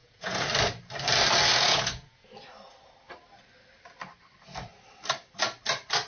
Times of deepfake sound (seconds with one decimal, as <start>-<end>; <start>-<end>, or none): 0.0-0.5; 1.5-2.3